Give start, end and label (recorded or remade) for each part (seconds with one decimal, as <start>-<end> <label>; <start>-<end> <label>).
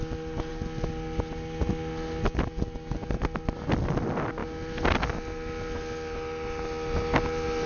0.0-7.7 recorded